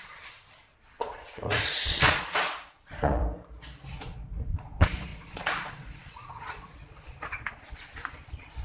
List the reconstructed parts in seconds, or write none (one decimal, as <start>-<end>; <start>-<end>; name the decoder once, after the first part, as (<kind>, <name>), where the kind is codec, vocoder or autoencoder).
0.0-3.2 (vocoder, Vocos); 3.9-8.6